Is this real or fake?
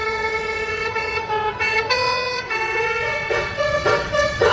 fake